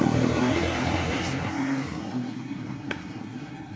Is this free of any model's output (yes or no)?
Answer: no